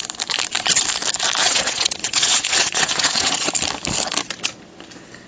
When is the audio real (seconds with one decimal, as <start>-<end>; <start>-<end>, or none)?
0.0-1.4; 3.5-5.3